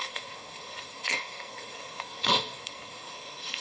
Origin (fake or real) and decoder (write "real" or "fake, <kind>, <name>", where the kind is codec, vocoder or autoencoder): fake, codec, SNAC